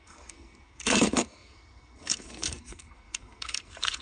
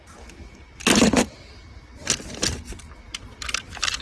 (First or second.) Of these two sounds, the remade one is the first